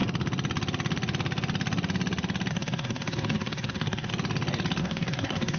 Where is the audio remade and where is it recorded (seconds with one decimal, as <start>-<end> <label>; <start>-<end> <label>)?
0.0-2.5 recorded; 2.5-4.1 remade; 4.1-4.8 recorded; 4.8-5.6 remade